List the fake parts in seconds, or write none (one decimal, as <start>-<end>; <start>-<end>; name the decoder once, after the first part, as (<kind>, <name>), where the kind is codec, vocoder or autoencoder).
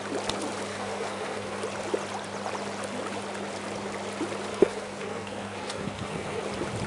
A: 0.7-1.6 (codec, SNAC); 4.5-6.4